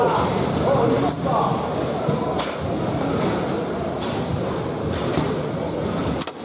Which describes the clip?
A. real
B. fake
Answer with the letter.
A